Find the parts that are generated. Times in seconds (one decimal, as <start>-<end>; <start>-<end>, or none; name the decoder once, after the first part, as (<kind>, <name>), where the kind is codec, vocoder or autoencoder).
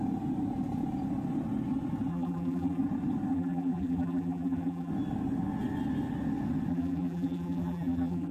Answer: 2.1-2.8 (vocoder, BigVGAN v2); 3.3-4.9; 6.7-8.3